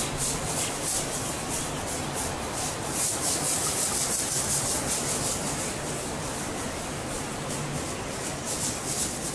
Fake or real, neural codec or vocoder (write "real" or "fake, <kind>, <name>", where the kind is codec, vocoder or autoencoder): real